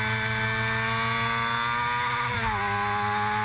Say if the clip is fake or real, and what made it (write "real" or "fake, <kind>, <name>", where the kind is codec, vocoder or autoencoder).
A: real